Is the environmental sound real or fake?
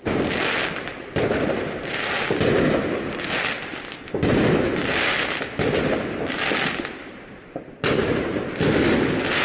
real